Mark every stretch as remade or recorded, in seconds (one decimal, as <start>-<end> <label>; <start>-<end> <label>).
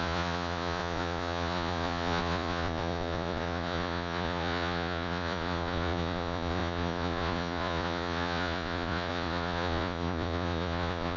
0.0-11.2 remade